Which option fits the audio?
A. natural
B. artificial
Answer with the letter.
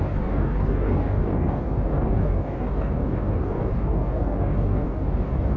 B